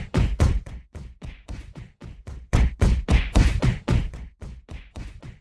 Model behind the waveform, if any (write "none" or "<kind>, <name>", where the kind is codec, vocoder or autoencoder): vocoder, Vocos